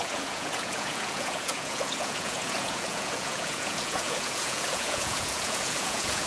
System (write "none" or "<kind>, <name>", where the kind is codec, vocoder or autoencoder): vocoder, Vocos